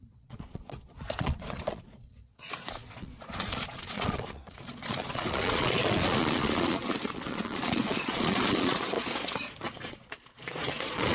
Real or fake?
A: fake